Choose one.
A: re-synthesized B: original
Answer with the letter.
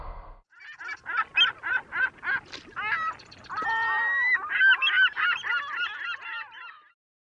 B